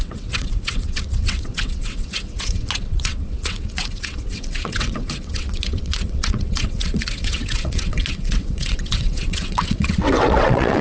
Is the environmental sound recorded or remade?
remade